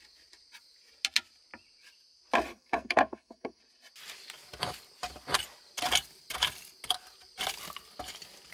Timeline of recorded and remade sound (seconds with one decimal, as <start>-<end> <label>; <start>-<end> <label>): 0.0-2.5 recorded; 2.5-3.6 remade; 3.6-8.5 recorded